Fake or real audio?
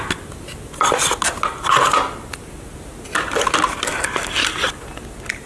real